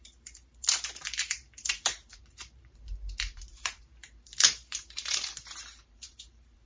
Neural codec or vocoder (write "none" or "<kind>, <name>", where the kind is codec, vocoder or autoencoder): vocoder, BigVGAN v2